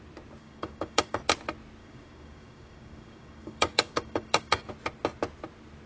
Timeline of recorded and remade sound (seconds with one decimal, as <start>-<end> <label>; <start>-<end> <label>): 0.0-0.4 recorded; 0.4-1.2 remade; 1.2-1.8 recorded; 1.8-4.7 remade; 4.7-5.9 recorded